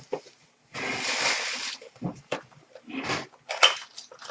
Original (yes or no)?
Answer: yes